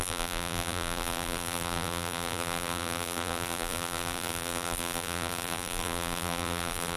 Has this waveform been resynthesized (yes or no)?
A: yes